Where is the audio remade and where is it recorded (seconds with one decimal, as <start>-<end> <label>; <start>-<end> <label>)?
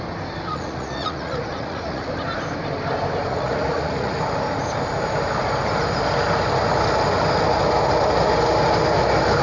0.0-0.5 recorded; 0.5-2.1 remade; 2.1-3.3 recorded; 3.3-4.2 remade; 4.2-9.4 recorded